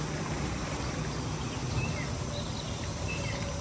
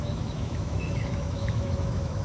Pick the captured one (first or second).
first